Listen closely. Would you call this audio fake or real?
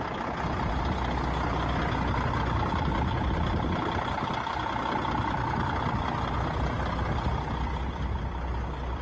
real